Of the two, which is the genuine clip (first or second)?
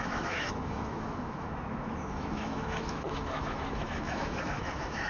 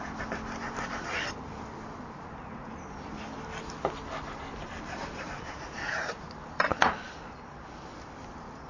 second